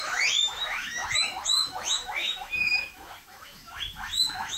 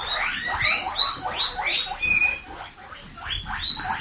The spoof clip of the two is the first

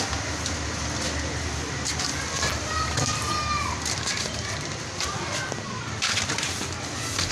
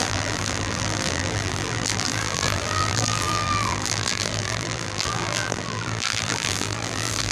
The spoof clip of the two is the second